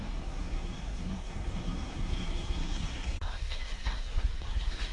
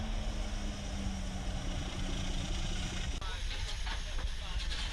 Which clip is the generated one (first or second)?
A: first